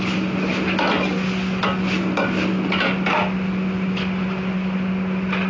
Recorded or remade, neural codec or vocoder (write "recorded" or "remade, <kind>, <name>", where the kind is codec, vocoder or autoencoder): recorded